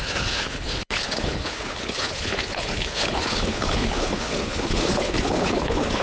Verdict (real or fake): fake